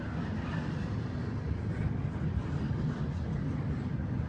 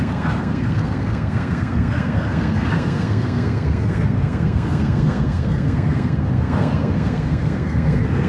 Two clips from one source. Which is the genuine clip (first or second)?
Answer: first